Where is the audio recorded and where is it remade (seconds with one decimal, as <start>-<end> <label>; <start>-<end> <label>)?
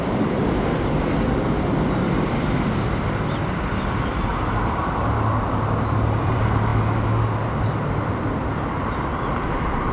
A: 0.0-4.3 remade; 4.3-6.2 recorded; 6.2-6.7 remade; 6.7-7.9 recorded; 7.9-9.9 remade